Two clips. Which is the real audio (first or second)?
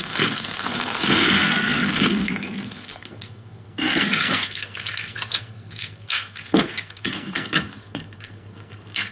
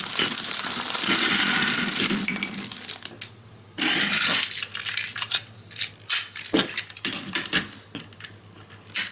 second